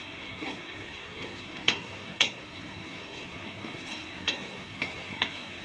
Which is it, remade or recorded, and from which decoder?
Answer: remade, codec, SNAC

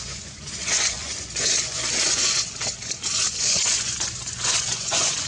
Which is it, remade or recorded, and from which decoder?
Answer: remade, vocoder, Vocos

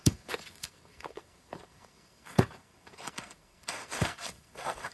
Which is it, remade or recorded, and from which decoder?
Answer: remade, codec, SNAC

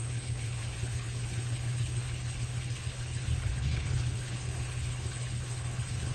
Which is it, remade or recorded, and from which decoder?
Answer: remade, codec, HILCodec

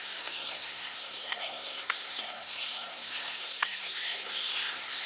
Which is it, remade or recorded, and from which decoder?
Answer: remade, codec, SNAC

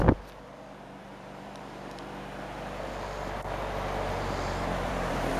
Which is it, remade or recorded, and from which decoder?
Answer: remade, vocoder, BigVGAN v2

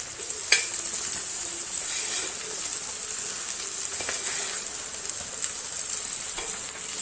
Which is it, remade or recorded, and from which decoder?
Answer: recorded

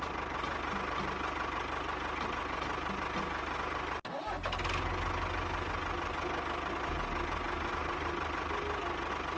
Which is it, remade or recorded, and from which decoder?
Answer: recorded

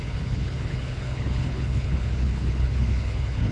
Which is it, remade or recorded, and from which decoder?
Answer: remade, codec, HILCodec